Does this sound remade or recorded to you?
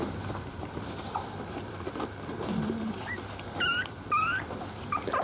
remade